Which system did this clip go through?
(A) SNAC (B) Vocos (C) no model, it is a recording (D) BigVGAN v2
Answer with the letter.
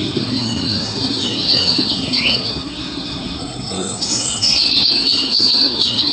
A